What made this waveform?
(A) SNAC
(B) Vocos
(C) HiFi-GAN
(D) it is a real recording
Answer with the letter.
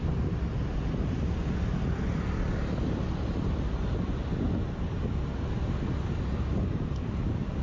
D